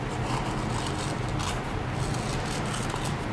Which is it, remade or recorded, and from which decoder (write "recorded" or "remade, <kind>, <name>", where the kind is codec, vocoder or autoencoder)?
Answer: recorded